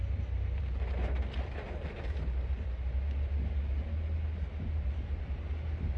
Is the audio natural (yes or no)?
yes